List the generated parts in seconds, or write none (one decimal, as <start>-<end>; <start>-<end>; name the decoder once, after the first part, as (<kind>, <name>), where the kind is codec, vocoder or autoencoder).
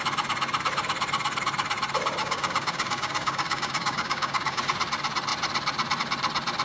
2.2-4.6 (codec, DAC)